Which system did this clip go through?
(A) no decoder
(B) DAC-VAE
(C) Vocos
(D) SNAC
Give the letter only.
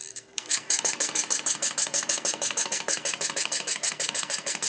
D